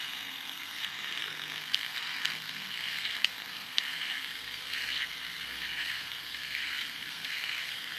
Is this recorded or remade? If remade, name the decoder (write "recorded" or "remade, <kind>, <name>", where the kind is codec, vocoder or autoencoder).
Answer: remade, codec, SNAC